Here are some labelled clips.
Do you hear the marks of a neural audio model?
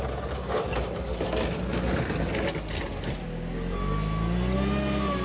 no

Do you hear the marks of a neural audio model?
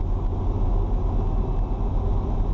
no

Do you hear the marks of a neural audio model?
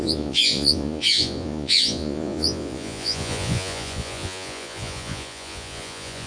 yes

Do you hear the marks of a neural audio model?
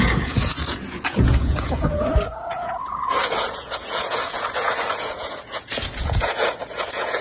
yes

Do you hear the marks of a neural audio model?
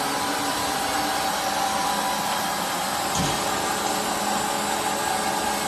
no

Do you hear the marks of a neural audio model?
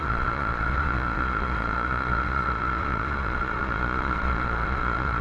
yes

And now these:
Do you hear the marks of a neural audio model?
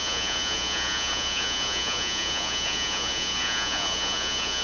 yes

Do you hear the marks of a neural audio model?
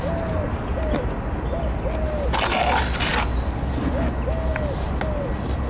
no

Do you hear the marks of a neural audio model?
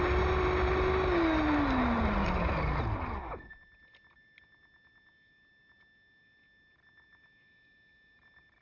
no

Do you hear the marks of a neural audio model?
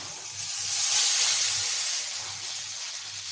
no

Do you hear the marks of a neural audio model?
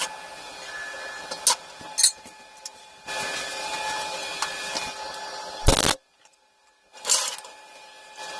no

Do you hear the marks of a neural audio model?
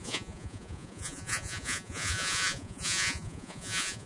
yes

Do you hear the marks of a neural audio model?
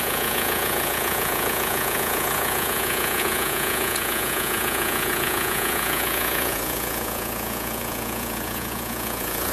yes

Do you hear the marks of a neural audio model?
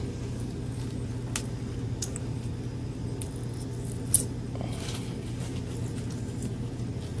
no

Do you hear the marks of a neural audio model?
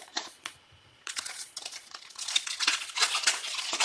yes